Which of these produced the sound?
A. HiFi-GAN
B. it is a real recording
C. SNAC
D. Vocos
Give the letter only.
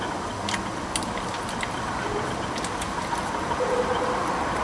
B